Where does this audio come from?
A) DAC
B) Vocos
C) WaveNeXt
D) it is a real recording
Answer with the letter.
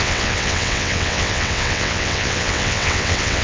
C